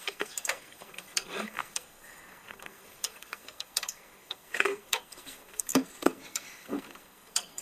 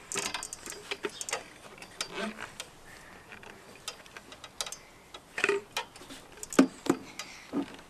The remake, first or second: first